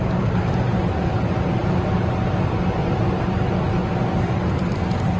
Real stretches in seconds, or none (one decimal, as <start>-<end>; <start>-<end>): 0.0-0.7; 1.6-2.8; 3.8-5.2